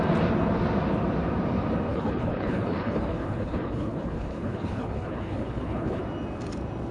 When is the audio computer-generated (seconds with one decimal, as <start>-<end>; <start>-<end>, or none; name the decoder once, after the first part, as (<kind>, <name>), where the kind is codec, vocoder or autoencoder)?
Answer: 1.9-6.0 (codec, HILCodec)